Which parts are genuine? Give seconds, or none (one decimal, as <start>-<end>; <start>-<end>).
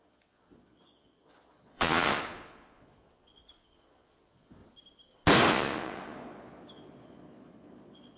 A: 4.6-5.5